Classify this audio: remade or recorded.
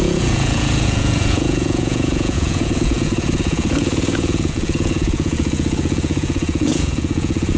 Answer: remade